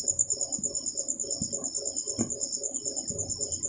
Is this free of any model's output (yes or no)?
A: yes